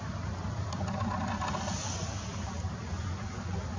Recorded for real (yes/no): yes